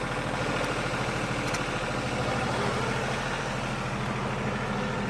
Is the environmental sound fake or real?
real